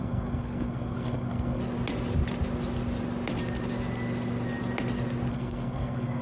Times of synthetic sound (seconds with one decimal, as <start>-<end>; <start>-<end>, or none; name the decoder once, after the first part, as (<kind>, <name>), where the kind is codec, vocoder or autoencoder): 0.0-1.6 (codec, SNAC); 5.3-6.2